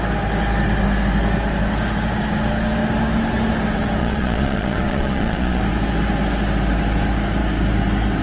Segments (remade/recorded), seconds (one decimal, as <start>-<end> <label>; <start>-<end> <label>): 0.0-4.0 recorded; 4.0-5.6 remade; 5.6-8.2 recorded